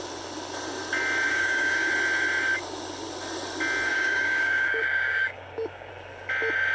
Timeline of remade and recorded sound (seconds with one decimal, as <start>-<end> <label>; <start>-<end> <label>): 0.0-1.3 recorded; 1.3-1.9 remade; 1.9-3.9 recorded; 3.9-5.9 remade; 5.9-6.7 recorded